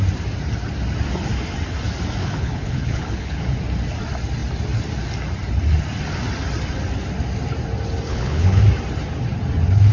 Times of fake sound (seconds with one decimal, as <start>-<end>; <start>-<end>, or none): 2.2-3.4; 8.1-8.6